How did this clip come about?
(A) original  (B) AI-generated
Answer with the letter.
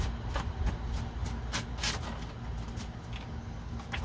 A